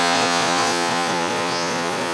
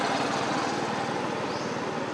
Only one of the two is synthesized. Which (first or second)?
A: first